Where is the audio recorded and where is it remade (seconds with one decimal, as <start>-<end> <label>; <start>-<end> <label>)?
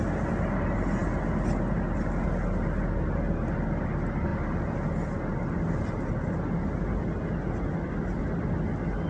0.0-9.1 recorded